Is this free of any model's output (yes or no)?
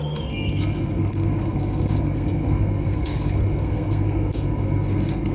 no